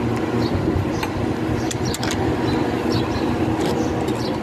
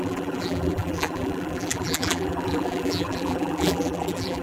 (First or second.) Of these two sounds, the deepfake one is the second